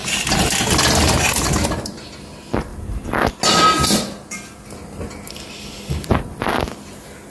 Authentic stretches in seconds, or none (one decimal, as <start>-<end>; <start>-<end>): 0.6-7.3